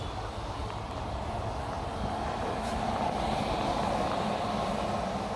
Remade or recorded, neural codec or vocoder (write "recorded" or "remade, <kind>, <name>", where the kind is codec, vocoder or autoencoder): recorded